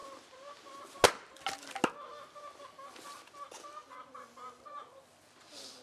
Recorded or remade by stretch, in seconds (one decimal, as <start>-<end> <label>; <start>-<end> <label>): 0.0-5.8 recorded